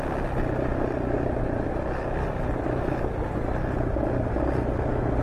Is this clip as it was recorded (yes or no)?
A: yes